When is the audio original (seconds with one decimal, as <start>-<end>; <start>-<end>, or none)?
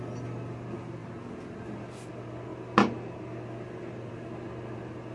0.0-5.1